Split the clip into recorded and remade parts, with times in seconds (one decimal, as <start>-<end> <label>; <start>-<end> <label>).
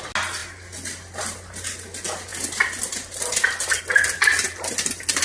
0.0-5.2 recorded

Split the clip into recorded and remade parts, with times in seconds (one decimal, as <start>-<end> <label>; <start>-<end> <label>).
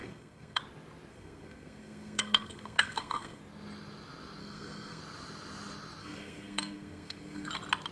0.0-0.6 remade; 0.6-1.1 recorded; 1.1-3.4 remade; 3.4-4.4 recorded; 4.4-5.0 remade; 5.0-6.0 recorded; 6.0-7.5 remade; 7.5-7.9 recorded